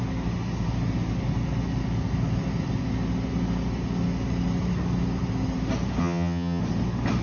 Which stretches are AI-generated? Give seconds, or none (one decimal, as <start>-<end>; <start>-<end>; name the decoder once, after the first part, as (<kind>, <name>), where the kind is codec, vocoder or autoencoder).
6.0-6.6 (vocoder, HiFi-GAN)